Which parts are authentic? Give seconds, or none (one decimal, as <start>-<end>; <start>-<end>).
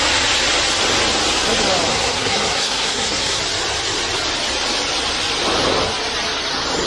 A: 0.0-1.9; 3.4-6.9